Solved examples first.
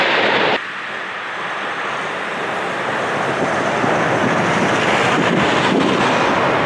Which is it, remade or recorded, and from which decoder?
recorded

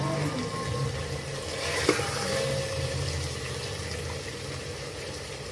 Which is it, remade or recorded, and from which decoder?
recorded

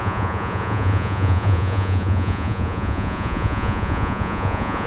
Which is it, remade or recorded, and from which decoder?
remade, vocoder, Vocos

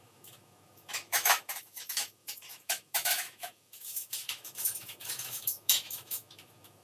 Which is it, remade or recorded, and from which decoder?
remade, autoencoder, DAC-VAE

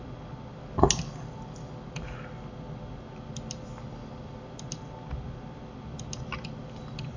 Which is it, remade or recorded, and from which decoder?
recorded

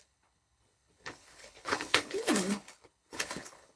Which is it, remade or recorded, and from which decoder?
remade, codec, HILCodec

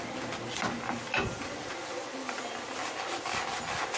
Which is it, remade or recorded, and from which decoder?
recorded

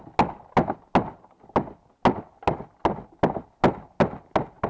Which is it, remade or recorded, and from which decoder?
recorded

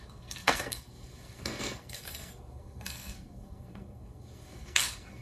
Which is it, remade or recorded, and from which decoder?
remade, codec, SNAC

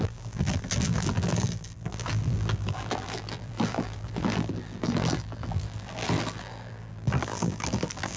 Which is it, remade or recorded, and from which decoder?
remade, vocoder, BigVGAN v2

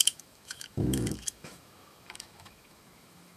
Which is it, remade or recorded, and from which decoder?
remade, autoencoder, DAC-VAE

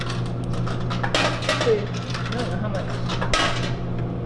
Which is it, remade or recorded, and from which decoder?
recorded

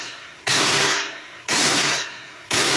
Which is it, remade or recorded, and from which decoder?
remade, codec, SNAC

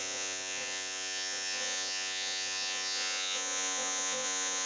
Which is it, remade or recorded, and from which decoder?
remade, vocoder, Vocos